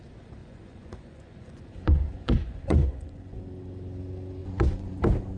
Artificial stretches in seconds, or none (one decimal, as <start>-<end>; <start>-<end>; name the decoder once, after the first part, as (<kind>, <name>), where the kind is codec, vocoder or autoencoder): 0.4-3.4 (vocoder, Vocos); 4.4-5.0